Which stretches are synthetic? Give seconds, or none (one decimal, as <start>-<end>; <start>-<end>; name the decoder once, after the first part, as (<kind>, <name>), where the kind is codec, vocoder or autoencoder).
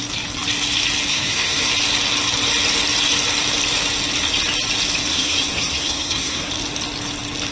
1.1-1.7 (codec, SNAC); 5.1-6.5